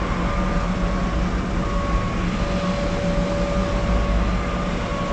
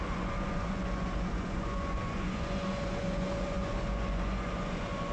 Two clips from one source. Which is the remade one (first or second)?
second